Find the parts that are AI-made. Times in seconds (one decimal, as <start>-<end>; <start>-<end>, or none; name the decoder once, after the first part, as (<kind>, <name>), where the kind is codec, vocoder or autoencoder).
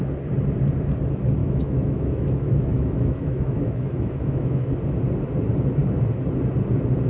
1.4-4.7 (autoencoder, DAC-VAE)